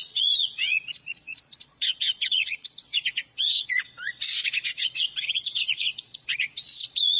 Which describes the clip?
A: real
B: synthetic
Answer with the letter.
B